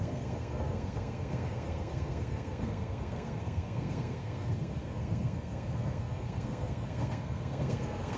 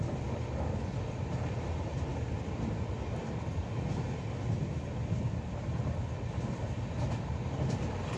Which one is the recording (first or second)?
second